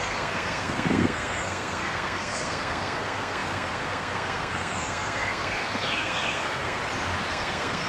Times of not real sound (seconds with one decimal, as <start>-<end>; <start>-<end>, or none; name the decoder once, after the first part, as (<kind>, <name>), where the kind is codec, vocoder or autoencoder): 0.0-6.8 (codec, SNAC); 7.3-7.9